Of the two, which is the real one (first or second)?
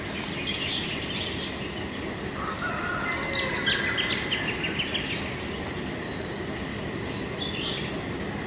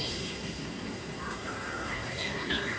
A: first